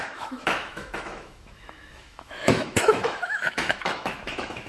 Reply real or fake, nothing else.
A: fake